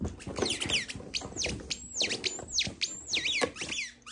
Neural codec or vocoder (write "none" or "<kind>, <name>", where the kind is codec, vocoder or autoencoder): none